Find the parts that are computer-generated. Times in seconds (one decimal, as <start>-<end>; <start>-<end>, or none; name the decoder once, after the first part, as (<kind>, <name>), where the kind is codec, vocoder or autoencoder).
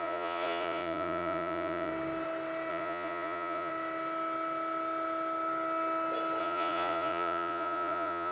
0.0-1.9 (vocoder, Vocos); 2.7-3.7; 6.4-8.3